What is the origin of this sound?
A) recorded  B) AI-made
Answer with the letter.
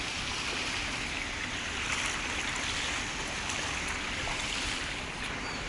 A